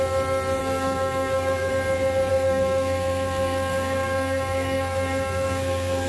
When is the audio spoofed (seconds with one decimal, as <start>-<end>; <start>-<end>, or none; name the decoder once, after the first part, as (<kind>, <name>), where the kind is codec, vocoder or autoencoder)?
0.6-1.7 (codec, SNAC); 2.3-6.1